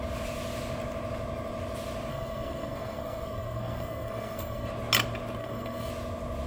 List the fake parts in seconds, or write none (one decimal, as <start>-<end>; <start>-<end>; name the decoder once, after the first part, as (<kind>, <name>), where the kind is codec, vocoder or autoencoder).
2.1-4.7 (codec, SNAC); 5.4-5.9